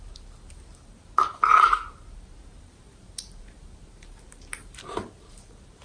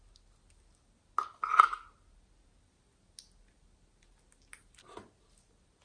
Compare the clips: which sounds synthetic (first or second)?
first